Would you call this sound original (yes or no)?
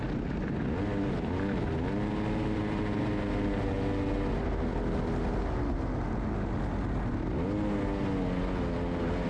yes